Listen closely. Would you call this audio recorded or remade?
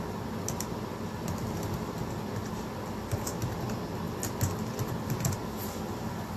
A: recorded